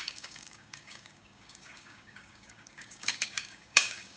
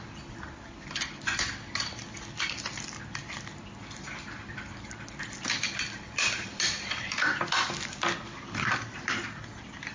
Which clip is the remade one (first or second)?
first